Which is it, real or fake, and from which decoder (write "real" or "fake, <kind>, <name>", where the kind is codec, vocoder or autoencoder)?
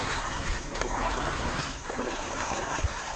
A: fake, codec, SNAC